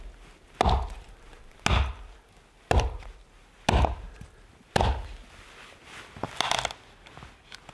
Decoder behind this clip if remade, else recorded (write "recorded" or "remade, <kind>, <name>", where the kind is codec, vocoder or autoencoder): recorded